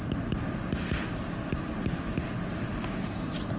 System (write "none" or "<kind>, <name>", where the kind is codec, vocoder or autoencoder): none